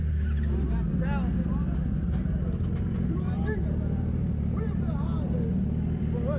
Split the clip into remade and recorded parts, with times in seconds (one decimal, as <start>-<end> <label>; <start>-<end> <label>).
0.0-1.8 recorded; 1.8-4.9 remade; 4.9-6.4 recorded